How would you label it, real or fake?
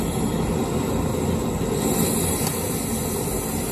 real